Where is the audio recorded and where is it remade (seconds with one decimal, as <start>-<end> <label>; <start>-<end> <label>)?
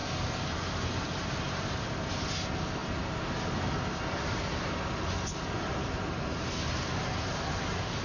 0.0-8.0 recorded